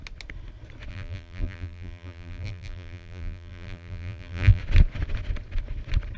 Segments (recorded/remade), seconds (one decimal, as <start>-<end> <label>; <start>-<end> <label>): 0.0-0.9 recorded; 0.9-4.6 remade; 4.6-6.2 recorded